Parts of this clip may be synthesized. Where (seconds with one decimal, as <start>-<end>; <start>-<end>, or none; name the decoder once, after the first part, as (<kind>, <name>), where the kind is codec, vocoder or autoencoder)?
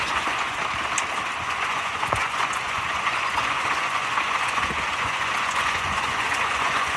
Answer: 0.0-0.6 (vocoder, Vocos); 1.4-7.0